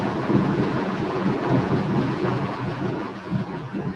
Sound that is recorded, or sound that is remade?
remade